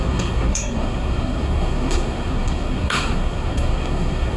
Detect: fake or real fake